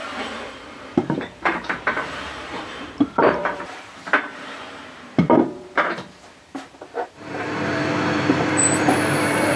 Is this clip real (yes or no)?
no